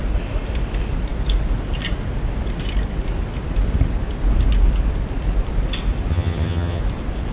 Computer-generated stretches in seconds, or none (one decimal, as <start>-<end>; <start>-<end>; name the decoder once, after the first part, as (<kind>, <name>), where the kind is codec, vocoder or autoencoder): 6.1-6.8 (vocoder, HiFi-GAN)

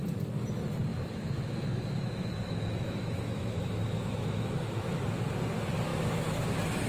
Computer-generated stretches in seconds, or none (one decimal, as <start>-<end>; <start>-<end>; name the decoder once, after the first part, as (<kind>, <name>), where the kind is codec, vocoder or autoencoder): 0.9-5.0 (autoencoder, DAC-VAE); 5.9-6.5

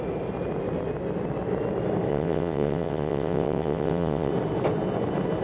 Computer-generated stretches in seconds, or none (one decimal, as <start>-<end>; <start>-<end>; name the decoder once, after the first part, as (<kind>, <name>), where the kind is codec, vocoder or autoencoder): 2.1-4.3 (vocoder, WaveNeXt)

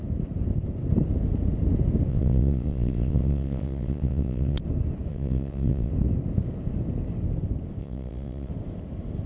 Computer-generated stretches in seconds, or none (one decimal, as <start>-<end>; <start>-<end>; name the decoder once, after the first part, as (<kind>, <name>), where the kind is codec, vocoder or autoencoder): 2.1-4.6 (vocoder, WaveNeXt); 5.1-5.9; 7.8-8.5

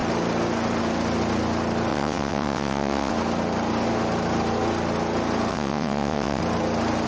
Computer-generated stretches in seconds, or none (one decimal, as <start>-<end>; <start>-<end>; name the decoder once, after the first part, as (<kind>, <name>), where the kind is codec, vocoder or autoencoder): 1.9-3.1 (vocoder, WaveNeXt); 5.5-6.4

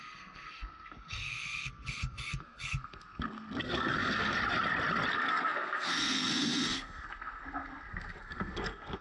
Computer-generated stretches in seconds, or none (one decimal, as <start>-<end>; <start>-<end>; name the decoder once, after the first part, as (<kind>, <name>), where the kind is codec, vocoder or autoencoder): 0.0-4.4 (codec, SNAC); 5.1-9.0